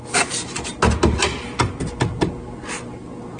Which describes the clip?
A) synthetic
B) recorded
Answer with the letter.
B